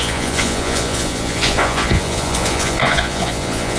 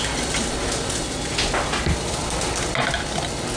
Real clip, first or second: second